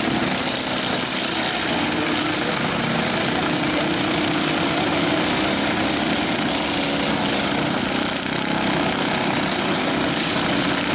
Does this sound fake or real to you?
real